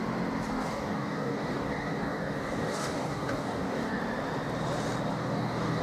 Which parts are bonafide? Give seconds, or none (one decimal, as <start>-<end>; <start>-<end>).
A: 0.0-0.5; 4.0-5.1